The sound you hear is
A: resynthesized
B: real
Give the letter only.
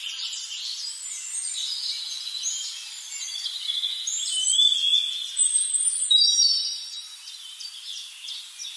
B